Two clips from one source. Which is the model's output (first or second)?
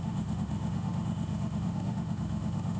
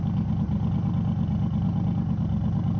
first